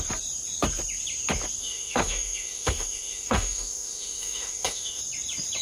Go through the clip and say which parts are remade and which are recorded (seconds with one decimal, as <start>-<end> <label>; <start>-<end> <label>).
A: 0.0-1.6 recorded; 1.6-5.0 remade; 5.0-5.6 recorded